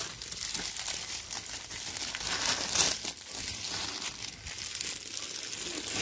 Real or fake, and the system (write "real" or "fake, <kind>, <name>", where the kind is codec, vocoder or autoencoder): real